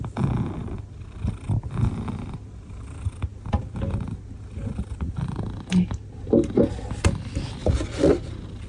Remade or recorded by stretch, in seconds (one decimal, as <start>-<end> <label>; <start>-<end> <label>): 0.0-0.6 recorded; 0.6-1.8 remade; 1.8-7.6 recorded; 7.6-8.7 remade